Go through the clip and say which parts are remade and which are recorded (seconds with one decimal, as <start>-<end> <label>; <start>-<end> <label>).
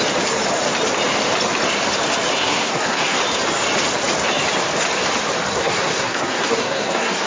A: 0.0-2.3 recorded; 2.3-3.2 remade; 3.2-5.5 recorded; 5.5-7.3 remade